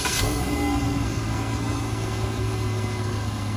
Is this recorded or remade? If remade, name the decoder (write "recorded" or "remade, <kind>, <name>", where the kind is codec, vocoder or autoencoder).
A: remade, codec, SNAC